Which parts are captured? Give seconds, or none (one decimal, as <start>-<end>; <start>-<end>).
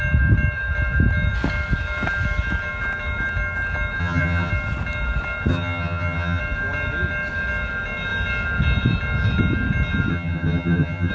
0.0-4.0; 4.5-5.5; 6.4-10.1